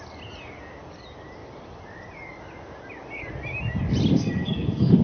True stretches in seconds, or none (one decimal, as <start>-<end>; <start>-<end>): 0.0-4.1